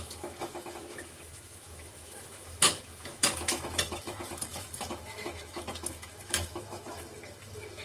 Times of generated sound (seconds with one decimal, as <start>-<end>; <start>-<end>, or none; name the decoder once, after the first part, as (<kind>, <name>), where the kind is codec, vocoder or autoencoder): 0.0-7.8 (autoencoder, DAC-VAE)